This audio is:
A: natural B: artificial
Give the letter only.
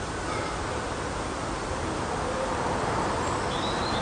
A